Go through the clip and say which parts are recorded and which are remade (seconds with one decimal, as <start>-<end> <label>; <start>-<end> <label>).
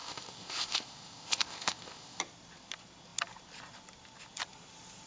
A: 0.0-2.2 remade; 2.2-5.1 recorded